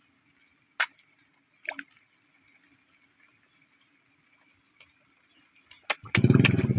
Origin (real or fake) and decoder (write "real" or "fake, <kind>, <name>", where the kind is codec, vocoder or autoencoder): real